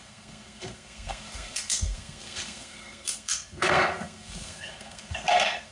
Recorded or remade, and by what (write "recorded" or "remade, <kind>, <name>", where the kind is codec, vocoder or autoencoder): remade, codec, SNAC